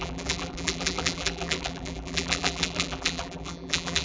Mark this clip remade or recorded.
remade